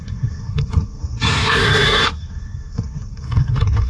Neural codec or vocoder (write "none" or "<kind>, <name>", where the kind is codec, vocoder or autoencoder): codec, SNAC